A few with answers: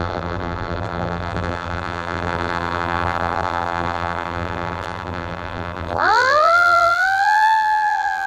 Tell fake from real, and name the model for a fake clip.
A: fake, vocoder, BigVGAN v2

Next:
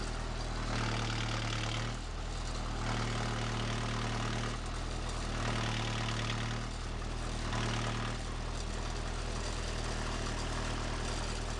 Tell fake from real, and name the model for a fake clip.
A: real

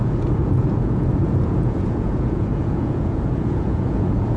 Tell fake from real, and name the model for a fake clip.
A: fake, vocoder, Vocos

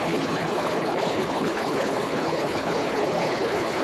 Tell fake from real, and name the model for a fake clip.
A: fake, codec, HILCodec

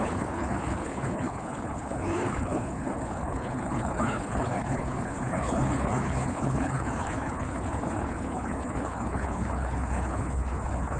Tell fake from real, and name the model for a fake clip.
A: fake, codec, HILCodec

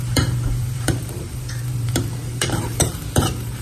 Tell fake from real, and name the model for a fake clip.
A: fake, vocoder, BigVGAN v2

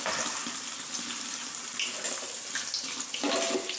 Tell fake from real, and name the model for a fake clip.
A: real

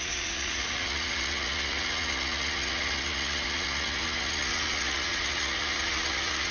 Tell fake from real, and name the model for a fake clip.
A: fake, vocoder, Vocos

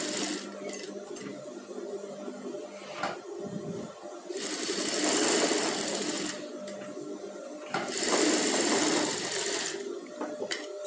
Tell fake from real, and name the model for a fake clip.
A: real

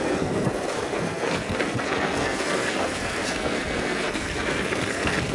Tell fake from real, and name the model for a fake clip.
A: fake, codec, SNAC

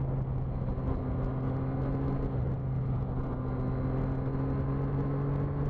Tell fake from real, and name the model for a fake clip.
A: real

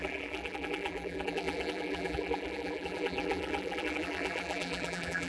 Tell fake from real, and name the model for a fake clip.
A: fake, vocoder, BigVGAN v2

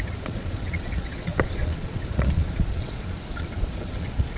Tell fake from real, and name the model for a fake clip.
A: fake, vocoder, Vocos